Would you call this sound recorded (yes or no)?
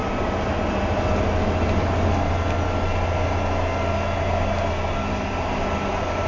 yes